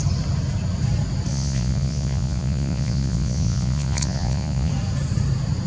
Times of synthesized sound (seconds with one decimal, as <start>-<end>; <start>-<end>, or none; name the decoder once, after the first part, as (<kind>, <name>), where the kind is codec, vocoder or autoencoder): 1.3-4.7 (vocoder, Vocos)